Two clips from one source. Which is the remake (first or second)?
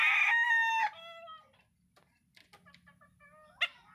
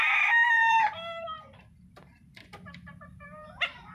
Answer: second